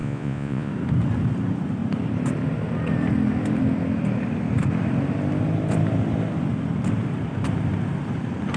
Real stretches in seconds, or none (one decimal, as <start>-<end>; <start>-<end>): 0.7-8.6

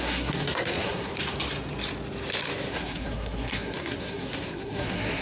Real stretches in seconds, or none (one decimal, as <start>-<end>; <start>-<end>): 1.1-2.7

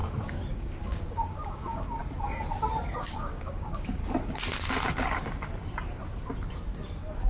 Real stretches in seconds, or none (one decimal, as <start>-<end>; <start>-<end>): 2.0-2.8; 4.0-7.3

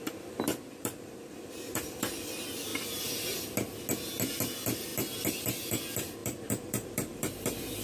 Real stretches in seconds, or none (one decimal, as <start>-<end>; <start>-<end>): 2.7-4.3

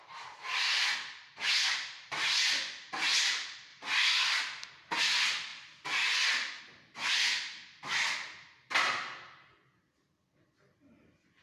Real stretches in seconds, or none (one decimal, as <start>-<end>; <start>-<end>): 0.0-11.4

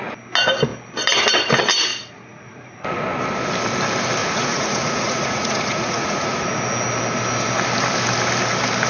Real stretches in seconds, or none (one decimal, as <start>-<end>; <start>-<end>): 0.0-1.9; 3.0-4.2; 6.5-8.9